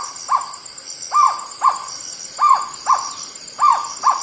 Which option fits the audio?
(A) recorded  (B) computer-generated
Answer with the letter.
A